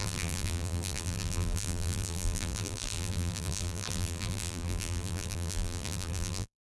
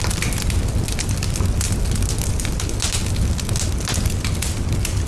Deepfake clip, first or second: first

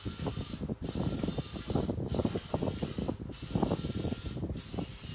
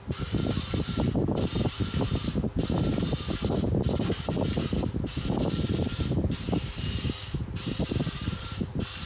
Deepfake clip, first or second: second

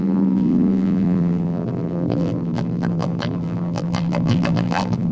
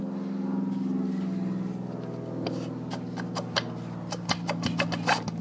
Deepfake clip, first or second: first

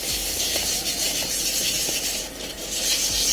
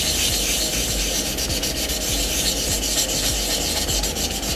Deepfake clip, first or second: first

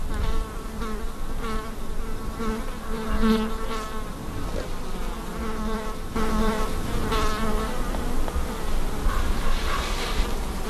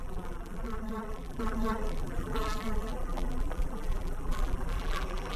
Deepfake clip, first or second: second